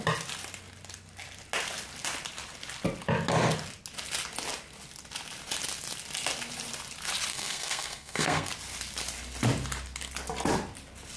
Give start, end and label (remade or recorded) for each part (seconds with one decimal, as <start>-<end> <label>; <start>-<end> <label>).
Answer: 0.0-7.3 recorded; 7.3-8.5 remade; 8.5-11.2 recorded